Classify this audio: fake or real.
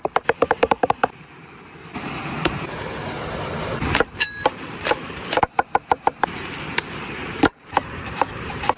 fake